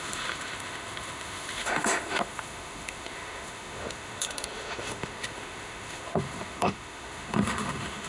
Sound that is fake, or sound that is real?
fake